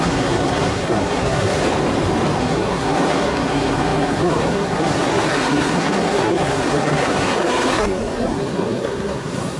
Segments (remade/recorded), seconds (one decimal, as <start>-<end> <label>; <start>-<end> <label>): 0.0-1.6 remade; 1.6-2.4 recorded; 2.4-9.6 remade